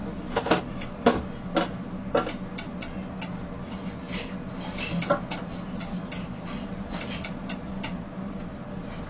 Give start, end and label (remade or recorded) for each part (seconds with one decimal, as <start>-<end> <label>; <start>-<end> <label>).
0.0-1.2 remade; 1.2-5.6 recorded; 5.6-9.1 remade